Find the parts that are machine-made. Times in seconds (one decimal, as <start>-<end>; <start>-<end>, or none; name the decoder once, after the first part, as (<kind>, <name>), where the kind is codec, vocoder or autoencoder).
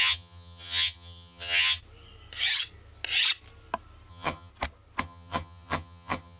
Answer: 0.0-1.8 (vocoder, HiFi-GAN); 4.1-4.5; 5.0-6.4